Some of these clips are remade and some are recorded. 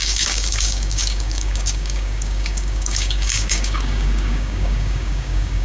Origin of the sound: remade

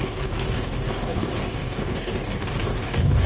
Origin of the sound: remade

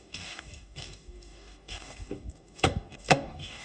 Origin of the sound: remade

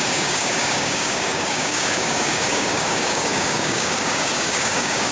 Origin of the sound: remade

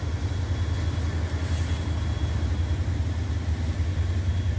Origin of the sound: recorded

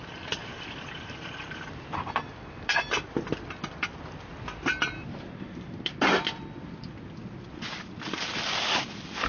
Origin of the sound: recorded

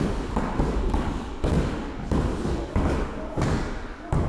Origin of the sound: remade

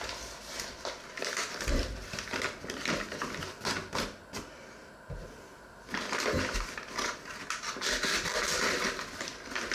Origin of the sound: recorded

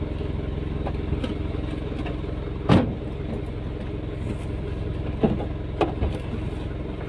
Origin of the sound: recorded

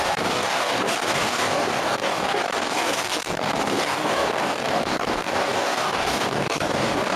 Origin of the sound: remade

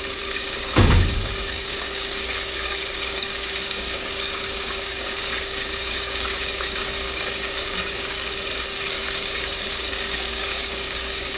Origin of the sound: remade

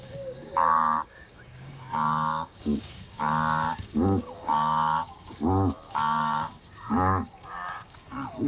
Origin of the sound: remade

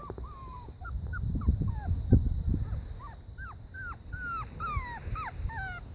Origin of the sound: recorded